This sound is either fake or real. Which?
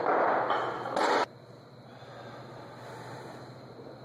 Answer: real